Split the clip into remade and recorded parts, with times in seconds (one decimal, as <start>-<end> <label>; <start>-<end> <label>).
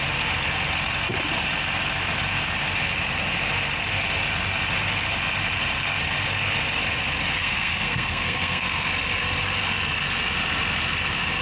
0.0-7.4 recorded; 7.4-8.9 remade; 8.9-11.4 recorded